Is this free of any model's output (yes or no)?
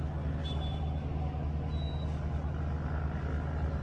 yes